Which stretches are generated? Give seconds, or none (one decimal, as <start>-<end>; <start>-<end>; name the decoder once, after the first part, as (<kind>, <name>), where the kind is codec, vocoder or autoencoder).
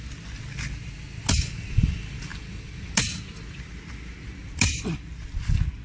none